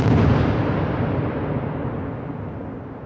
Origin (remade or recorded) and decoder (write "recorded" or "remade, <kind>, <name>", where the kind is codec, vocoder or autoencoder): recorded